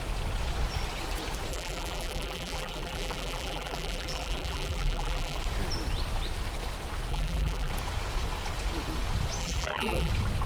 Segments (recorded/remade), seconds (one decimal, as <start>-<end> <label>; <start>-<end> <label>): 0.0-1.5 recorded; 1.5-5.4 remade; 5.4-7.1 recorded; 7.1-7.7 remade; 7.7-9.4 recorded; 9.4-10.1 remade; 10.1-10.5 recorded